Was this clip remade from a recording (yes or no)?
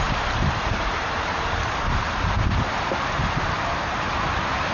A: yes